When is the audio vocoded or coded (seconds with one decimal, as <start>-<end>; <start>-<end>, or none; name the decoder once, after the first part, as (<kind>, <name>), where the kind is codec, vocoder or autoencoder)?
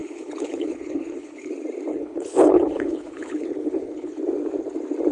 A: 0.0-1.5 (codec, HILCodec); 1.9-4.2